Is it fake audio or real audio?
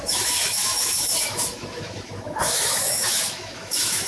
fake